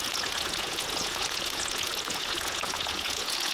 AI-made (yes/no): yes